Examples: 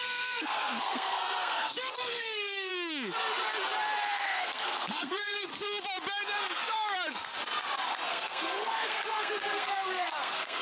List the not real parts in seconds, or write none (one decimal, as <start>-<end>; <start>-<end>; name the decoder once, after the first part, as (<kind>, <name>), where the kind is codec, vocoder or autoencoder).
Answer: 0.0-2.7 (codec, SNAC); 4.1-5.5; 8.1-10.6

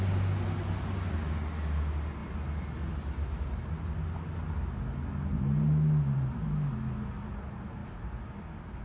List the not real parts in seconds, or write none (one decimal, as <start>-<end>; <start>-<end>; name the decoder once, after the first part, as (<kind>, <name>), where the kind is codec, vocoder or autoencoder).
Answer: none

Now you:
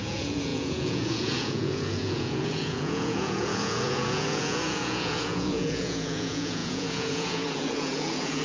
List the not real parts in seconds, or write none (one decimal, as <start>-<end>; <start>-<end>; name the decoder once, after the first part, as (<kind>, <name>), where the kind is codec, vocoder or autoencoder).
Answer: 0.0-8.4 (vocoder, Vocos)

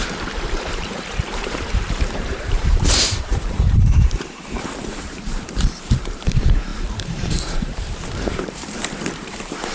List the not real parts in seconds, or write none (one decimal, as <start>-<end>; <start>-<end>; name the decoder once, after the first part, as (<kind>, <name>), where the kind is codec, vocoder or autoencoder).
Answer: 0.0-9.7 (vocoder, BigVGAN v2)

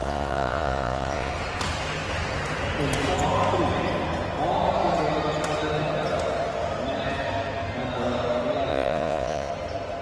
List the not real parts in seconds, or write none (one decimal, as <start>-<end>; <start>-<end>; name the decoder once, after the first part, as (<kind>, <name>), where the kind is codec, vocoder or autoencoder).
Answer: 0.0-1.3 (vocoder, Vocos); 8.7-9.5

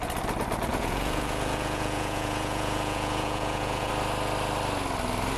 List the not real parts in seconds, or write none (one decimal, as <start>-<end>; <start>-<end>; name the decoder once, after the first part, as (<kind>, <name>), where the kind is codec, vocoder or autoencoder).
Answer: 0.7-3.9 (vocoder, Vocos)

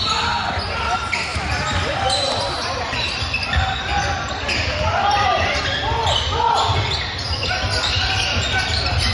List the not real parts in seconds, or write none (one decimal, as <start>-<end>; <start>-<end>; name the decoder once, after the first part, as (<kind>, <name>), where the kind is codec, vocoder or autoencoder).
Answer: 1.3-5.6 (vocoder, BigVGAN v2)

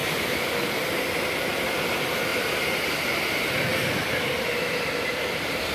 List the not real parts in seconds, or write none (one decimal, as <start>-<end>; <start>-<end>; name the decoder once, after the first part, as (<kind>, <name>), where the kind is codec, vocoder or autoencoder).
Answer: none